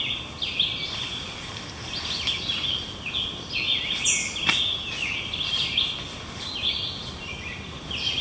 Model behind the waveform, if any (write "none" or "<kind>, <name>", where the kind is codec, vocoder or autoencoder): none